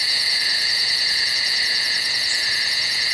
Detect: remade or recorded remade